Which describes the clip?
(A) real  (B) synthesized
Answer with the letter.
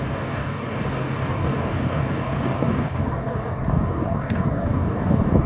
B